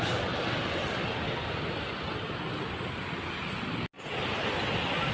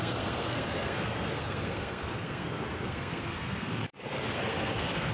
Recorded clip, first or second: first